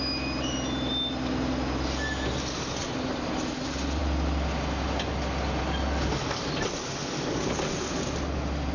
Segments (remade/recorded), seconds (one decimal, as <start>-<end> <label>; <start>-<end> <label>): 0.0-8.7 recorded